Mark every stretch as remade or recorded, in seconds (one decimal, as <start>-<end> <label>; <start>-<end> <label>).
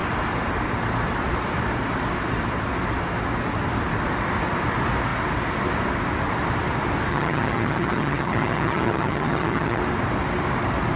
0.0-7.1 recorded; 7.1-9.8 remade; 9.8-11.0 recorded